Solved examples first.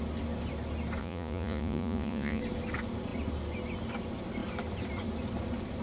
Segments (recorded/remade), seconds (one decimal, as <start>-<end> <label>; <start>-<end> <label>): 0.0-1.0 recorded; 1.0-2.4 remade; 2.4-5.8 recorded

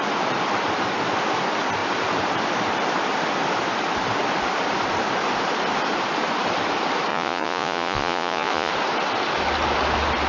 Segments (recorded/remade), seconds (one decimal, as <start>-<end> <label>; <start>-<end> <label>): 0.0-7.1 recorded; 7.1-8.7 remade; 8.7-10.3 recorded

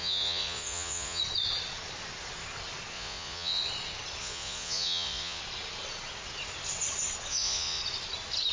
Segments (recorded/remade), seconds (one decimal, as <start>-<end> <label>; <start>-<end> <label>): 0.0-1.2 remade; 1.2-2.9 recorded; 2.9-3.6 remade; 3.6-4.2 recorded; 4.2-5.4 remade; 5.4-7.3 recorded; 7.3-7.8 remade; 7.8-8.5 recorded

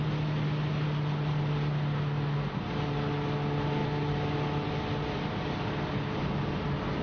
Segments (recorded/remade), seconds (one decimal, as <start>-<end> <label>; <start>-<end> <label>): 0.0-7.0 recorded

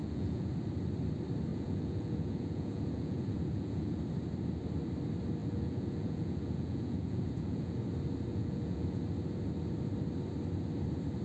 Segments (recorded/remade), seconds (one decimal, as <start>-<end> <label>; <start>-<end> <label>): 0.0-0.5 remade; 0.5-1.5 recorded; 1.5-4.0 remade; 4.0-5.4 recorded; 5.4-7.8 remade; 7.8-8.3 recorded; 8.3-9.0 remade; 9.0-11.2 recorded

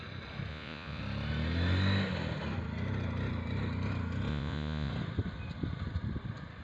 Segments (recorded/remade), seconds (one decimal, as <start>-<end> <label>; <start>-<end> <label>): 0.0-0.5 recorded; 0.5-1.0 remade; 1.0-4.3 recorded; 4.3-4.9 remade; 4.9-6.6 recorded

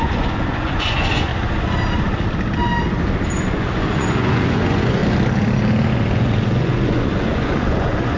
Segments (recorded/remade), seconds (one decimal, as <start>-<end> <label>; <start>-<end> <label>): 0.0-1.3 remade; 1.3-3.3 recorded; 3.3-5.0 remade; 5.0-5.9 recorded; 5.9-8.2 remade